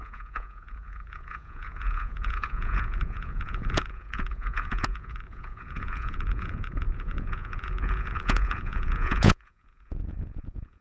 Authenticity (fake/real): fake